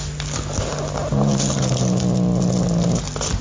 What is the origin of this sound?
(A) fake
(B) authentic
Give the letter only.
B